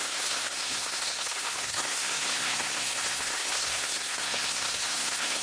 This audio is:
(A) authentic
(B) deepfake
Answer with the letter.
B